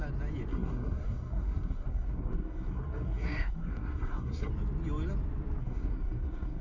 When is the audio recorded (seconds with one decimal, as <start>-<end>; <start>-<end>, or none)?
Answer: 0.0-0.5; 4.5-5.6